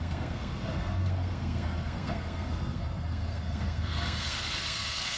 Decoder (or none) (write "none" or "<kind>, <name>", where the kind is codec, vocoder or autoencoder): codec, SNAC